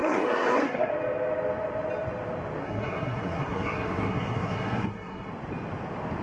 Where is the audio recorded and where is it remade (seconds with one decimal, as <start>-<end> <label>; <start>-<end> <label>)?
0.0-0.9 remade; 0.9-2.6 recorded; 2.6-5.3 remade; 5.3-6.2 recorded